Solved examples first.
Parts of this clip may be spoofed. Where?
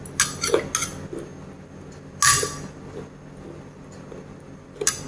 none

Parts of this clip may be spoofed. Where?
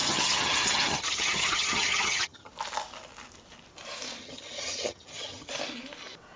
0.0-2.5; 4.2-5.5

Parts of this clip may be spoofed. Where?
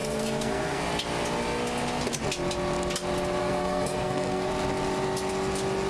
0.0-0.8; 3.4-4.5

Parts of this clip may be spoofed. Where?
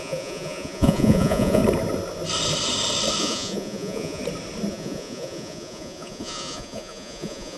0.0-1.6; 3.2-4.2; 4.7-7.6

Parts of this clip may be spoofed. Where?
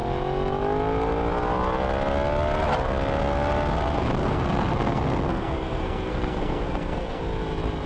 4.2-7.2